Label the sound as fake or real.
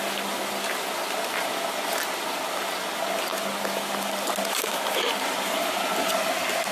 real